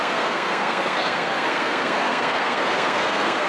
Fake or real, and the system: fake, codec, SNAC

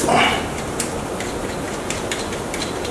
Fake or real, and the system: real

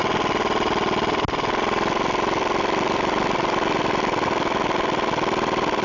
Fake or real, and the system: real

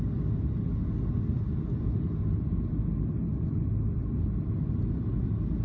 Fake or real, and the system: real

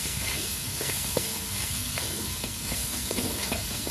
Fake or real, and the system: fake, codec, SNAC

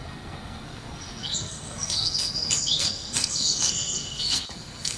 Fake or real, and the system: fake, codec, SNAC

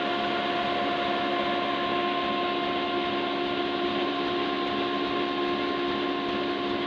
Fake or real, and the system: real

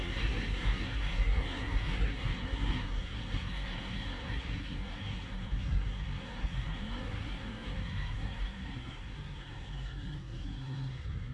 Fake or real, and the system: fake, codec, SNAC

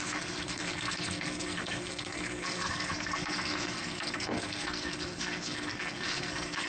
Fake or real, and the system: fake, codec, SNAC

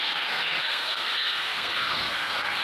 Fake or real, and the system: fake, codec, SNAC